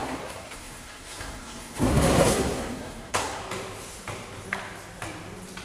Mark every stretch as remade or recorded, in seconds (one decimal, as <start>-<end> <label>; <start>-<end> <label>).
0.0-3.4 remade; 3.4-5.6 recorded